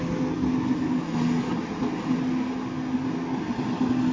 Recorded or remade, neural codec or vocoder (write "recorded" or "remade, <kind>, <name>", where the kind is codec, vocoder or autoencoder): recorded